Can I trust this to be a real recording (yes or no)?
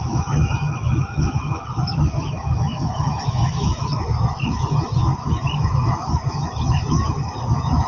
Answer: no